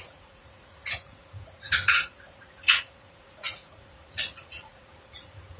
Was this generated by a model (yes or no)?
yes